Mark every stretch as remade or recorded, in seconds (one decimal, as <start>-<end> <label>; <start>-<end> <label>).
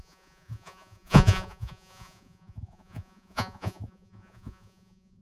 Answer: 0.0-5.2 remade